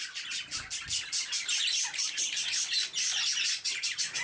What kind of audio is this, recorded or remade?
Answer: recorded